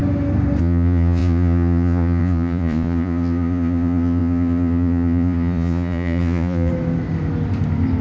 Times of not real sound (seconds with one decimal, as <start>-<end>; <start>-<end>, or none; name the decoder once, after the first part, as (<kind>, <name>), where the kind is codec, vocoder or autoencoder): 0.6-6.7 (vocoder, Vocos)